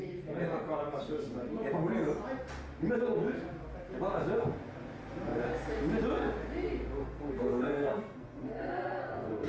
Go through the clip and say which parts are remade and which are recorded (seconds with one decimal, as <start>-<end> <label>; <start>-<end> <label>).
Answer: 0.0-7.0 recorded; 7.0-9.5 remade